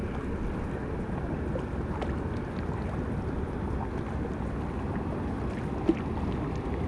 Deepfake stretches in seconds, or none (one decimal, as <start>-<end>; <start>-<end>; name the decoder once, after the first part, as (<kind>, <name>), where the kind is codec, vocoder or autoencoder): none